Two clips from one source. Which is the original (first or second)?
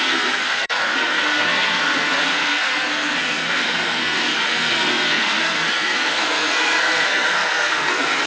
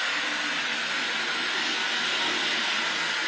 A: second